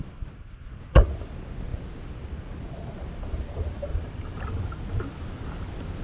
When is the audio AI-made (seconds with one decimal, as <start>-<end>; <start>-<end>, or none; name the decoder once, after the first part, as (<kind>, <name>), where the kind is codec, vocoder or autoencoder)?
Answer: 3.9-4.4 (vocoder, BigVGAN v2)